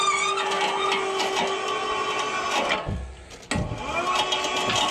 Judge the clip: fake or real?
real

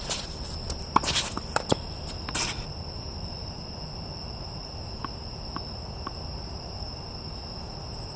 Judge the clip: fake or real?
real